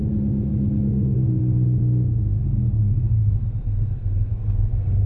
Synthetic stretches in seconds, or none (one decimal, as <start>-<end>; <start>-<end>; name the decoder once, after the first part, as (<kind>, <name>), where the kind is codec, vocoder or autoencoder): 0.0-5.1 (codec, SNAC)